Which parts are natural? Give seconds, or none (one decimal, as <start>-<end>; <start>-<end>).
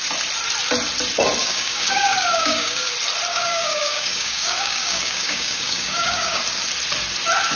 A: 0.0-1.4; 2.9-3.3; 6.4-7.6